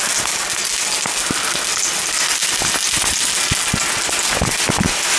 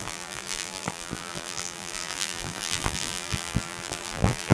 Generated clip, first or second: second